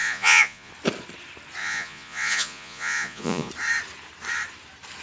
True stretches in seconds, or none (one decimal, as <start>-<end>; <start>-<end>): 0.7-1.6; 3.5-5.0